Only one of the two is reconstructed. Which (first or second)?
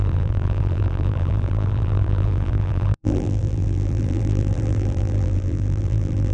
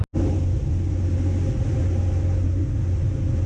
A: first